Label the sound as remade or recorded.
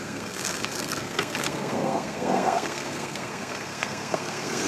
remade